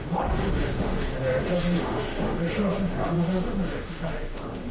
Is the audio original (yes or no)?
no